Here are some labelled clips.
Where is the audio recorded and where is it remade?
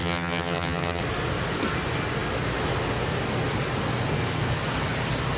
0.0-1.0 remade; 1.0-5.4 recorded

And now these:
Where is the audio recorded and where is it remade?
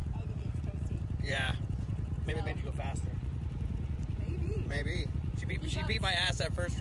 0.0-6.8 remade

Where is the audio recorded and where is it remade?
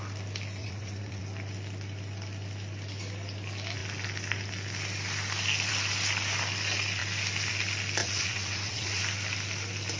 0.0-0.6 recorded; 0.6-1.2 remade; 1.2-8.0 recorded; 8.0-9.0 remade; 9.0-10.0 recorded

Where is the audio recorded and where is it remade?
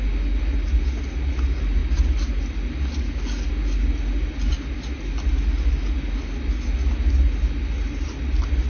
0.0-8.7 recorded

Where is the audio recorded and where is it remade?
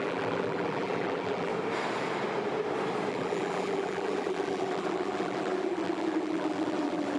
0.0-1.5 remade; 1.5-3.1 recorded; 3.1-7.2 remade